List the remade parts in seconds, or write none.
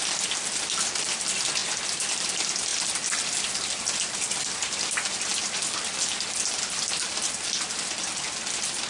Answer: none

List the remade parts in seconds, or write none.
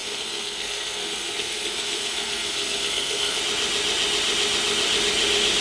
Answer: 0.0-3.4 (codec, SNAC)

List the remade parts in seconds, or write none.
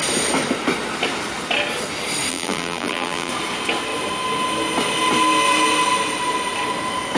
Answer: 2.3-3.3 (vocoder, BigVGAN v2)